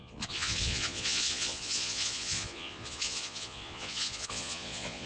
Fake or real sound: fake